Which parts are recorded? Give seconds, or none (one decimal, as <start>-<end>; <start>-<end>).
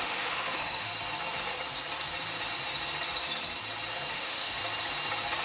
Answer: 0.9-4.1; 4.6-5.4